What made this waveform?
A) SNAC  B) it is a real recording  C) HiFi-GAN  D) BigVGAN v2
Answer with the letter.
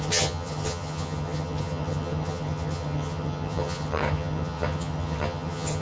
C